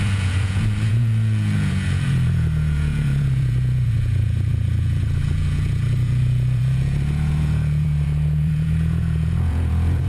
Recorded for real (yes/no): no